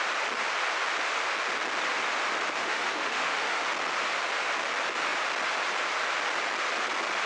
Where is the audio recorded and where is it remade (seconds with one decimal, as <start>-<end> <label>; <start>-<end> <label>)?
0.0-2.6 recorded; 2.6-3.6 remade; 3.6-7.3 recorded